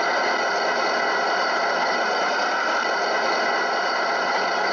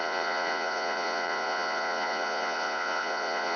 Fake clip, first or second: second